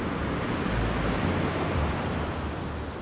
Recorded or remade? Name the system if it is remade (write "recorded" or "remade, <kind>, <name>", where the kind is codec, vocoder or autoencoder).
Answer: recorded